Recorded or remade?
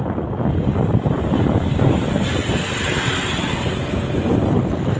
recorded